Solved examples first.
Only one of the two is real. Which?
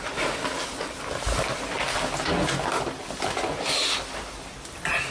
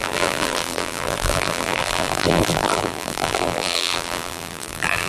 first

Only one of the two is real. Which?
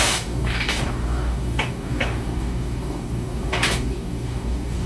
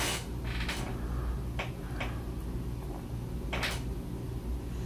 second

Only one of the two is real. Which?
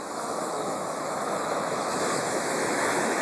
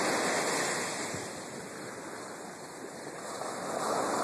second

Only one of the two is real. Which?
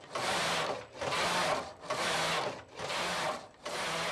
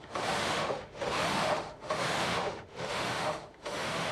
first